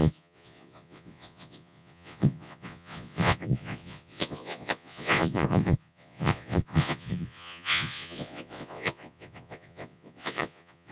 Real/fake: fake